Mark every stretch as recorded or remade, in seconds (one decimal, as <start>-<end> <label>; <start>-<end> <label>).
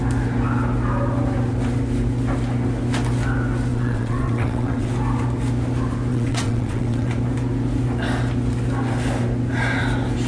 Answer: 0.0-3.7 recorded; 3.7-4.9 remade; 4.9-6.1 recorded; 6.1-7.1 remade; 7.1-10.3 recorded